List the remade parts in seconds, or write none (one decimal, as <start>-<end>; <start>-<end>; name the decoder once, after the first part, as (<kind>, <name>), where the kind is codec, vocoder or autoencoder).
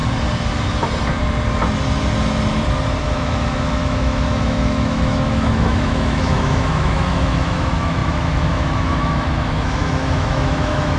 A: 3.0-11.0 (autoencoder, DAC-VAE)